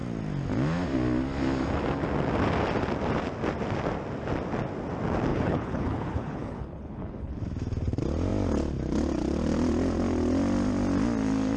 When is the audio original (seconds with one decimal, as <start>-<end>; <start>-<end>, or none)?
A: 0.0-5.3; 7.4-11.6